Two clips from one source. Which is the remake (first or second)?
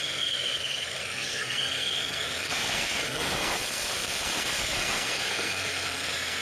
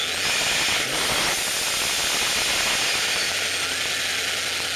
first